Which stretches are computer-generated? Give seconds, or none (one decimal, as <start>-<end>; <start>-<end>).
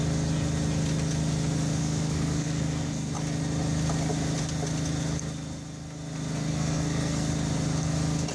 1.8-3.1; 6.5-7.3